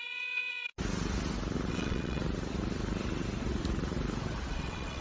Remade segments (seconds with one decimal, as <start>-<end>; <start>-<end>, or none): 0.0-0.7; 1.7-2.2; 4.5-5.0